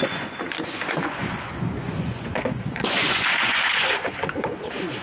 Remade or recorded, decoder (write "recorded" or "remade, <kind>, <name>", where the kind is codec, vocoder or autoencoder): remade, vocoder, Vocos